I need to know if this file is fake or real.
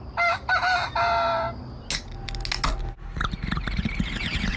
real